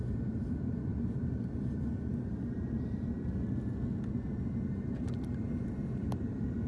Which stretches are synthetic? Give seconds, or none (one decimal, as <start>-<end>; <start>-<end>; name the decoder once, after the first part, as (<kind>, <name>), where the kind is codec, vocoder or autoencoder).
none